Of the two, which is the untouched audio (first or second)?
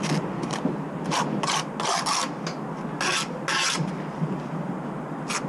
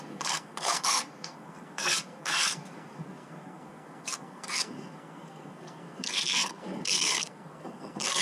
first